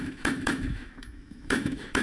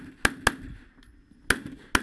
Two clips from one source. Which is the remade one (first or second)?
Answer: first